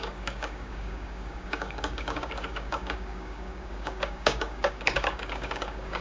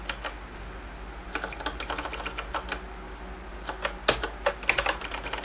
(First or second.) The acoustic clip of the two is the second